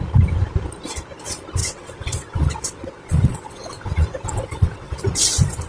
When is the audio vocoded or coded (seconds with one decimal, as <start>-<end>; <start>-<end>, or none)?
1.6-5.0